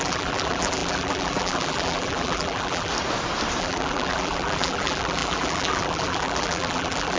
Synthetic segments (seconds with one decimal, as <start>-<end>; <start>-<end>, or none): 0.0-2.9; 3.6-7.2